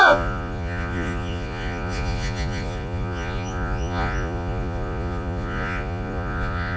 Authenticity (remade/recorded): remade